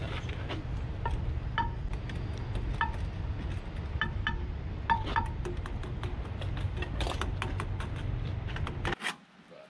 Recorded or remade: recorded